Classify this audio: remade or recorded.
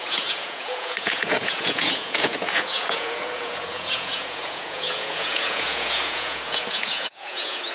remade